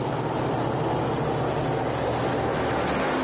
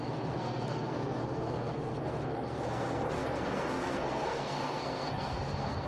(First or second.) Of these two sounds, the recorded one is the first